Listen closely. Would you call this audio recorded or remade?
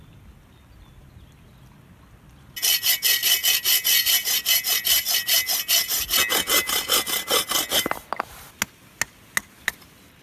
recorded